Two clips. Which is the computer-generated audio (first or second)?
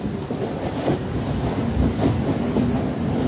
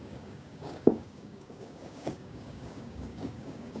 second